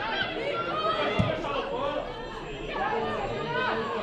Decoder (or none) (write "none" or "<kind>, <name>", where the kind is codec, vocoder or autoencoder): none